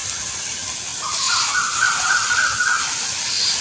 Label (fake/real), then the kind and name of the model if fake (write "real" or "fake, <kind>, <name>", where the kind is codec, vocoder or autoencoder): real